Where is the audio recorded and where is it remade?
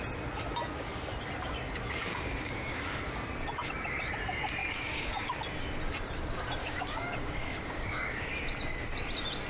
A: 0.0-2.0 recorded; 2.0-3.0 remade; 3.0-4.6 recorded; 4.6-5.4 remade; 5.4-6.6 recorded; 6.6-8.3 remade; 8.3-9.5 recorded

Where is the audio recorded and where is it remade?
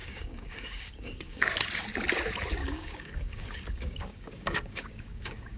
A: 0.0-1.5 remade; 1.5-2.6 recorded; 2.6-5.6 remade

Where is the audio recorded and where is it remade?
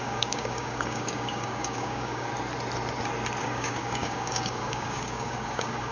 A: 0.0-2.3 remade; 2.3-3.4 recorded; 3.4-5.9 remade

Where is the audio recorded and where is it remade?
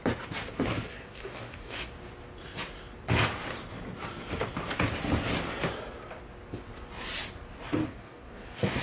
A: 0.0-0.9 recorded; 0.9-1.9 remade; 1.9-7.8 recorded; 7.8-8.8 remade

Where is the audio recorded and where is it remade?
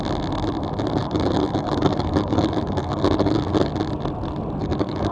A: 0.0-1.0 recorded; 1.0-3.7 remade; 3.7-4.6 recorded; 4.6-5.1 remade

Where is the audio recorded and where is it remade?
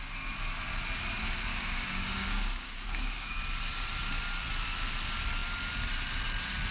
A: 0.0-1.5 recorded; 1.5-3.4 remade; 3.4-6.7 recorded